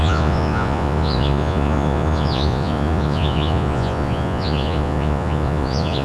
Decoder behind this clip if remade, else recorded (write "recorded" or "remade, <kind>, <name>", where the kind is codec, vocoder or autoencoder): remade, vocoder, Vocos